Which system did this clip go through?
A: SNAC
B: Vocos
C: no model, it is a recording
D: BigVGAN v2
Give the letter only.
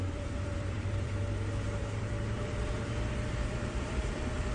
D